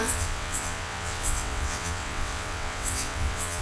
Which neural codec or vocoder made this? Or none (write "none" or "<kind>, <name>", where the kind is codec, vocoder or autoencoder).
vocoder, WaveNeXt